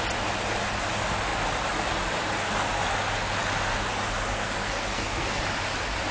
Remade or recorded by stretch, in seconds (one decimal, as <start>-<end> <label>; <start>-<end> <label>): 0.0-4.3 recorded; 4.3-5.4 remade; 5.4-6.1 recorded